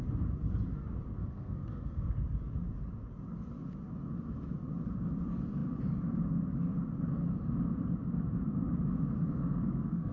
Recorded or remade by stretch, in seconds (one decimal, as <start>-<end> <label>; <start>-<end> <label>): 0.0-1.2 recorded; 1.2-2.1 remade; 2.1-9.3 recorded; 9.3-10.1 remade